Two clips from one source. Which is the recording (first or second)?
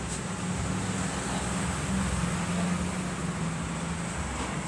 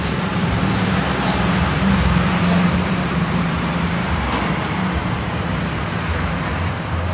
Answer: first